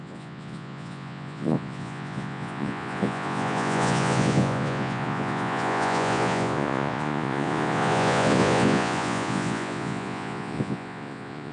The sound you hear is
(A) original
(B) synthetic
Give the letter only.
B